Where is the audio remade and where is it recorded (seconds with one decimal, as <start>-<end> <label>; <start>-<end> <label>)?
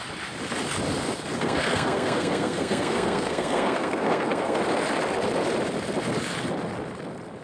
0.0-1.3 recorded; 1.3-4.6 remade; 4.6-7.4 recorded